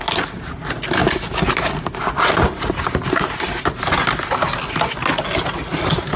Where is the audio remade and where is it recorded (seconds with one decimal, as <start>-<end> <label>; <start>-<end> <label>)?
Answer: 0.0-6.2 recorded